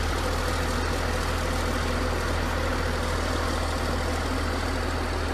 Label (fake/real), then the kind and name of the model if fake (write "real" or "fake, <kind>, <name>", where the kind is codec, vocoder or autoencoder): real